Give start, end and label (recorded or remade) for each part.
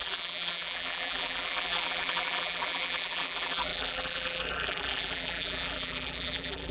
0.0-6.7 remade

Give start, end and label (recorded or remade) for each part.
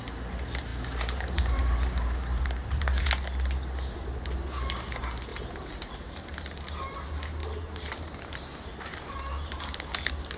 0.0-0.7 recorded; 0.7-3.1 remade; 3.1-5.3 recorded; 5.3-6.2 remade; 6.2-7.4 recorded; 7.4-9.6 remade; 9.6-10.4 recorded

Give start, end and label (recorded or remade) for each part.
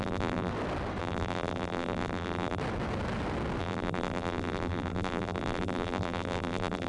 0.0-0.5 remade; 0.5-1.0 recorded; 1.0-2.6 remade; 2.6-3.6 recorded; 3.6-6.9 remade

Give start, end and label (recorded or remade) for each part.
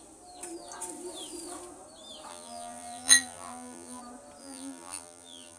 0.0-2.3 recorded; 2.3-4.0 remade; 4.0-4.4 recorded; 4.4-5.6 remade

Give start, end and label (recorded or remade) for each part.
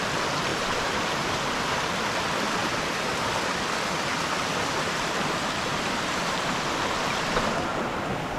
0.0-0.5 recorded; 0.5-1.9 remade; 1.9-2.6 recorded; 2.6-3.3 remade; 3.3-5.7 recorded; 5.7-6.5 remade; 6.5-8.4 recorded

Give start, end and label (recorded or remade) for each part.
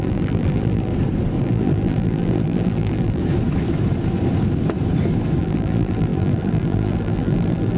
0.0-0.9 remade; 0.9-1.4 recorded; 1.4-3.2 remade; 3.2-5.4 recorded; 5.4-7.8 remade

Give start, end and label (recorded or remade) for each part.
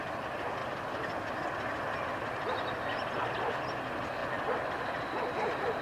0.0-5.8 recorded